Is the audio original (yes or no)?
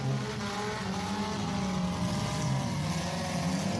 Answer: yes